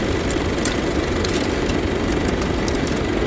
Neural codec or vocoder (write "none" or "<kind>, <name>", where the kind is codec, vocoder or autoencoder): none